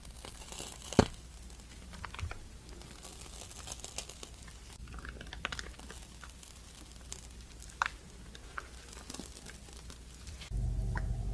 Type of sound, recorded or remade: recorded